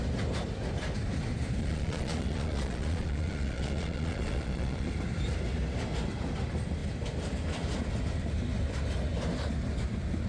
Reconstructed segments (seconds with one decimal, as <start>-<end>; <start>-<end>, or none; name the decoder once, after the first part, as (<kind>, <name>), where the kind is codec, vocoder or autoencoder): 1.6-4.9 (vocoder, Vocos)